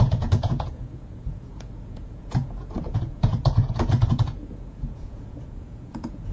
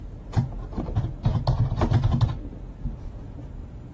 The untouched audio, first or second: second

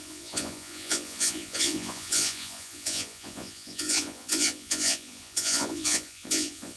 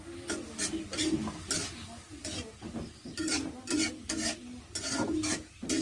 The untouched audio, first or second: second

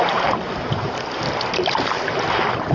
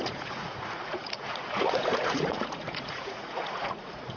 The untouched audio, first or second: first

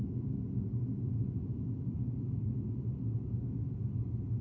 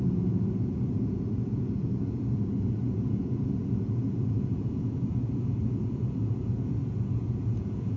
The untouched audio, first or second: first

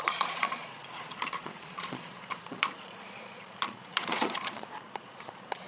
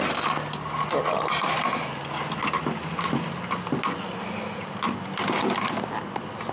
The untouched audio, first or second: second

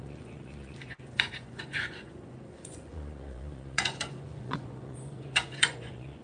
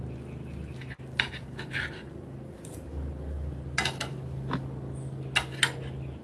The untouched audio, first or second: second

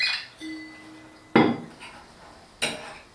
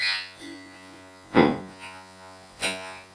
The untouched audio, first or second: first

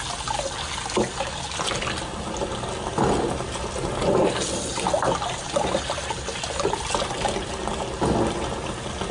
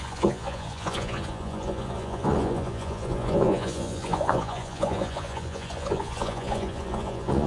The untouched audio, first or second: first